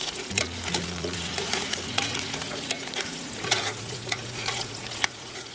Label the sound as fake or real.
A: fake